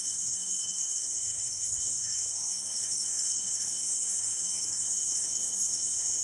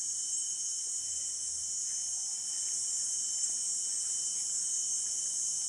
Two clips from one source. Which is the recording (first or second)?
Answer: second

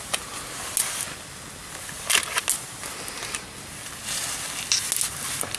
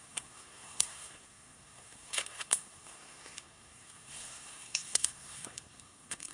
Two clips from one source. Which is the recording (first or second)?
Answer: first